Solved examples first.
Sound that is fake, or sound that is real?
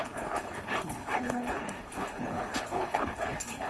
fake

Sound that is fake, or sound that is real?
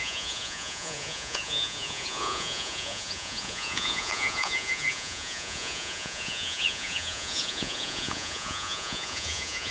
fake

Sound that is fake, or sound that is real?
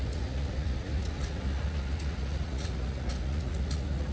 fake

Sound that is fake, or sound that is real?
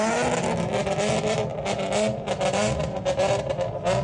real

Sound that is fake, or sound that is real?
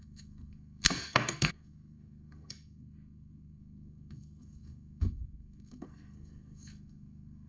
fake